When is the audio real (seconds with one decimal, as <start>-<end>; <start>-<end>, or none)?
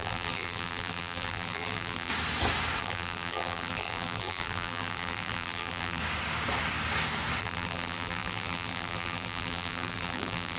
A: 2.1-2.8; 6.0-7.4